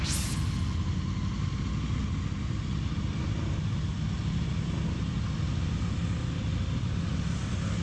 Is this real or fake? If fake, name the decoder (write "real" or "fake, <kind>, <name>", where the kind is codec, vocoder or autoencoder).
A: real